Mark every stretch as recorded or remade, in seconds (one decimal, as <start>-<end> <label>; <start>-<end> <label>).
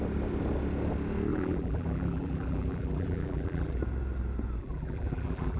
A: 0.0-1.3 recorded; 1.3-3.8 remade; 3.8-4.6 recorded; 4.6-5.6 remade